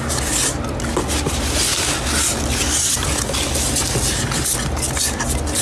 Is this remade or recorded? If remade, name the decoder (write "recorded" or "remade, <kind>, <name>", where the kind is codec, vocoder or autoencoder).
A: recorded